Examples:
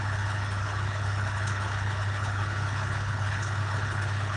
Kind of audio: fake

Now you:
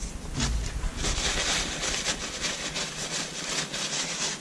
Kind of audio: real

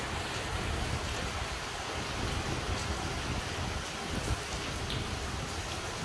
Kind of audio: real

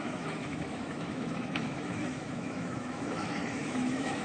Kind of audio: fake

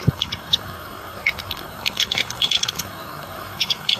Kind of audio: fake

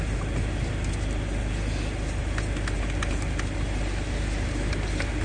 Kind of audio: real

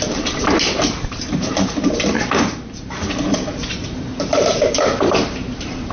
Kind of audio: fake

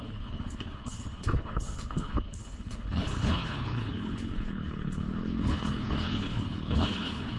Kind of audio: fake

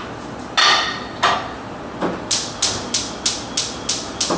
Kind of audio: real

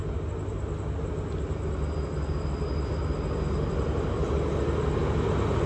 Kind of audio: real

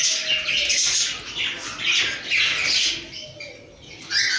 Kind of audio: real